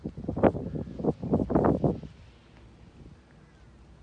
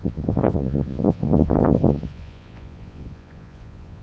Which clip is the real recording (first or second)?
first